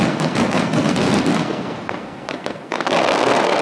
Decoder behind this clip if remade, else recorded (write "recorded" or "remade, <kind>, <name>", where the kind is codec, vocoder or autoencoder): remade, codec, SNAC